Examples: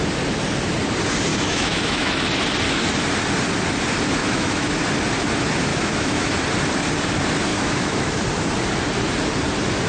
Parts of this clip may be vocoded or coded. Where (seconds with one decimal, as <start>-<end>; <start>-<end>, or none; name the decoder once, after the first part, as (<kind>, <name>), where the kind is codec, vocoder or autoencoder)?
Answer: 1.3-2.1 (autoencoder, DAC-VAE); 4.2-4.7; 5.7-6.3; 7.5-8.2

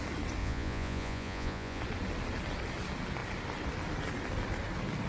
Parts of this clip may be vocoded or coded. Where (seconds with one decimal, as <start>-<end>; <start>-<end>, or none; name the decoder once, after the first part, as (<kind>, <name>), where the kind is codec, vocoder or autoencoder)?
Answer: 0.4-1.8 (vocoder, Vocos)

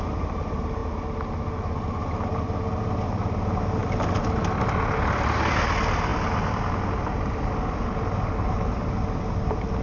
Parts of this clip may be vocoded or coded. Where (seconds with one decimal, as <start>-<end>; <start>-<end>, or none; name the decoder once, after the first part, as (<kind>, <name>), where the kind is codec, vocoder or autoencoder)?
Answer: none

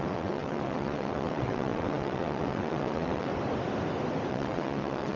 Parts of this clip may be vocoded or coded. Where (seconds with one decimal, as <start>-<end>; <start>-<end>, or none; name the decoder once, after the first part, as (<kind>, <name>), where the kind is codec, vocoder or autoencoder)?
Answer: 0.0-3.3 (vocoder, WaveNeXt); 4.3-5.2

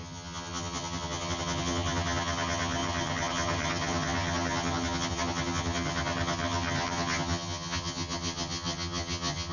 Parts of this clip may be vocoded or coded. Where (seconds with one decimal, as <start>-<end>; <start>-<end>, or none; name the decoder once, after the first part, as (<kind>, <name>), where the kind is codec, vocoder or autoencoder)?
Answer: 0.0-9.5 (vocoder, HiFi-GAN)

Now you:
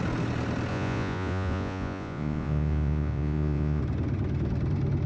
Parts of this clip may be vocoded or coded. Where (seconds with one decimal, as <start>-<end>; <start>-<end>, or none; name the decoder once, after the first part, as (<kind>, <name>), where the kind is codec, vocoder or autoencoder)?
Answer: 0.7-3.8 (vocoder, Vocos)

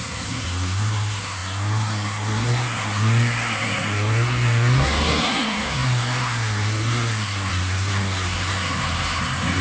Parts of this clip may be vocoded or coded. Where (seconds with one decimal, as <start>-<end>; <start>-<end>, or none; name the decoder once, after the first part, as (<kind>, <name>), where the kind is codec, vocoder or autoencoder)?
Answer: 0.0-9.6 (codec, SNAC)

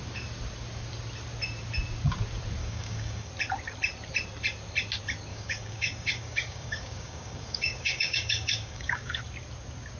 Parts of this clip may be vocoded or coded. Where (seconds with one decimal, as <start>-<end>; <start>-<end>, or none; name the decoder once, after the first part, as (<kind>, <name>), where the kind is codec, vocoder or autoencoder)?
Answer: 2.6-3.3 (codec, DAC); 5.3-9.2